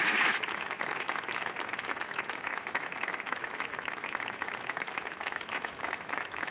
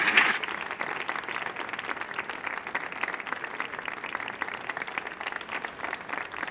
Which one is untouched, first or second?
second